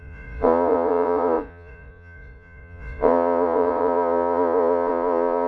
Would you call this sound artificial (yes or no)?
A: yes